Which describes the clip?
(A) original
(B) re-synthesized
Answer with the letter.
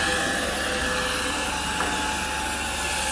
A